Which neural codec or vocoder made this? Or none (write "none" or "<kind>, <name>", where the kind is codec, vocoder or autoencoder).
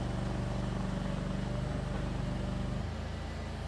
none